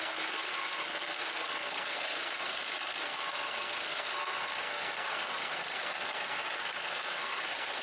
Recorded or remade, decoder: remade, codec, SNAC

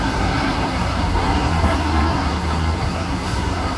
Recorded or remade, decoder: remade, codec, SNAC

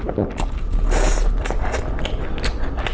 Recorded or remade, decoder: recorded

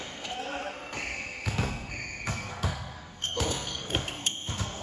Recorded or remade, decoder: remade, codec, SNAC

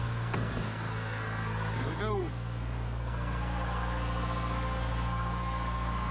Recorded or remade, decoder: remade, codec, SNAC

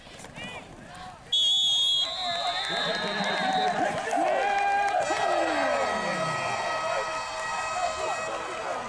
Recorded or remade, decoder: recorded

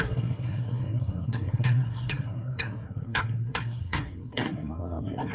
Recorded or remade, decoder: remade, codec, SNAC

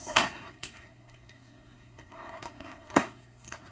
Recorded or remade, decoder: remade, codec, SNAC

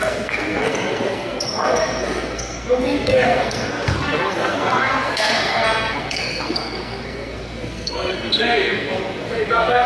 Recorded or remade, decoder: remade, codec, SNAC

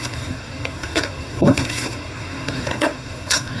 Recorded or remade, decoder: remade, codec, SNAC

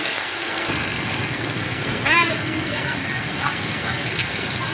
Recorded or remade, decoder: remade, codec, SNAC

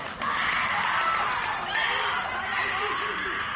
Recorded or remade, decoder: recorded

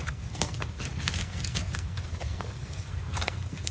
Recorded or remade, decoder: remade, codec, SNAC